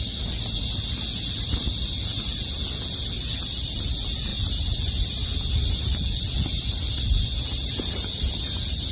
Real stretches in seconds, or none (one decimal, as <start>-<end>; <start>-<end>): 0.0-8.9